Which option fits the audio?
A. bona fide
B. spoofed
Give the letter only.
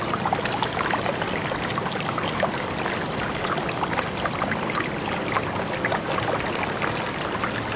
A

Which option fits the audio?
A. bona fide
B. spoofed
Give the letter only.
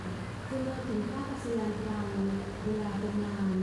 A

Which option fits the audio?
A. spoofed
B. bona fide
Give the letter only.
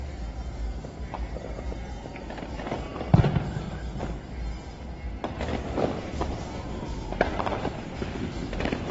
B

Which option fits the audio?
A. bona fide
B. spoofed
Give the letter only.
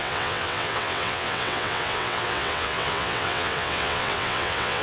B